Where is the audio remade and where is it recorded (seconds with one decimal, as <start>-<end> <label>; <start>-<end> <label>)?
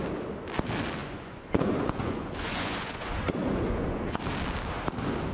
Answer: 0.0-1.0 recorded; 1.0-4.2 remade; 4.2-5.3 recorded